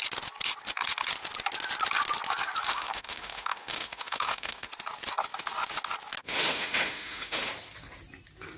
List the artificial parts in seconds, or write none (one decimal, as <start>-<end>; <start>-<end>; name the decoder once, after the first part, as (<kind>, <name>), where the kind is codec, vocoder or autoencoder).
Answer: 2.7-4.7 (autoencoder, DAC-VAE); 6.2-7.5